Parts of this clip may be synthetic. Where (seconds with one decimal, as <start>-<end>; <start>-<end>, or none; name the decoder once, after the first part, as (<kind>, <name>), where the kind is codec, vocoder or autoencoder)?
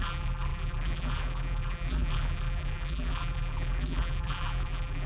0.0-5.1 (vocoder, BigVGAN v2)